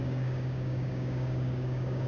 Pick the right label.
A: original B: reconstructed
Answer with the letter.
B